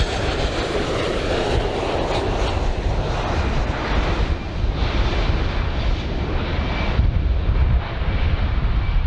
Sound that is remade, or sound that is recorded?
recorded